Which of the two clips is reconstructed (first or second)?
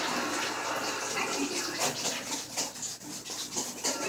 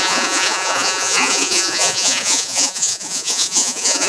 second